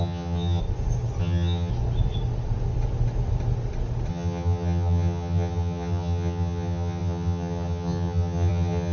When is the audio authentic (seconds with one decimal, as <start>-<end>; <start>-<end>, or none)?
0.6-1.2; 1.7-4.1